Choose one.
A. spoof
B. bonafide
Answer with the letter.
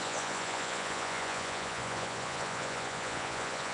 A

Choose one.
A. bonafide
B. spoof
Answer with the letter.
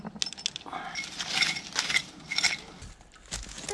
A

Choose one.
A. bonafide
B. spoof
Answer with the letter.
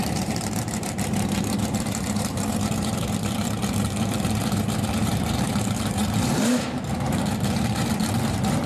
B